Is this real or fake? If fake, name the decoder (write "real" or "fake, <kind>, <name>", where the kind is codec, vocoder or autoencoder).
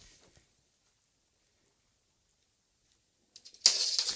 real